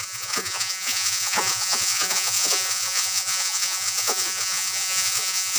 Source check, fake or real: fake